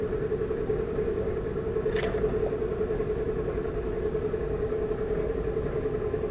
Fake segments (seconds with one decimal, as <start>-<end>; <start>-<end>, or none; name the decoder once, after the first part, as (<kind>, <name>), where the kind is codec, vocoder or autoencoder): none